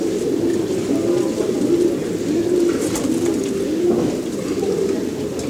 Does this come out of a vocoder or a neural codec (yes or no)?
no